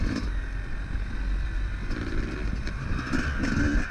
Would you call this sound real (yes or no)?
yes